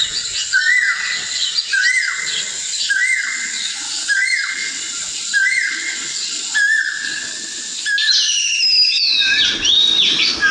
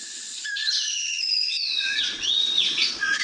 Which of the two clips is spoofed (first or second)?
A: second